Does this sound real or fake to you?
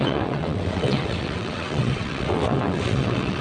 fake